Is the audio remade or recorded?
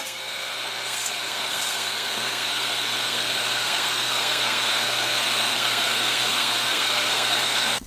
remade